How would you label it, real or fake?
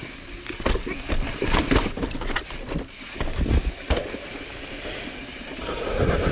real